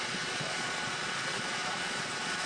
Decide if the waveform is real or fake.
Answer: fake